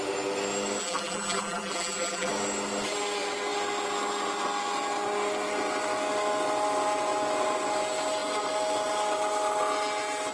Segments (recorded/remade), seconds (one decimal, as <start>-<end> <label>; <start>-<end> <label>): 0.0-0.8 recorded; 0.8-2.3 remade; 2.3-10.3 recorded